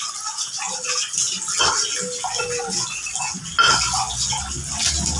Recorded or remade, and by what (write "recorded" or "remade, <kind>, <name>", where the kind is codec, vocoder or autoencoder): recorded